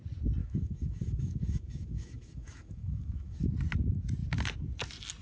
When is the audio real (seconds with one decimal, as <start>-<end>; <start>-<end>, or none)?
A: 0.0-0.4; 3.5-5.2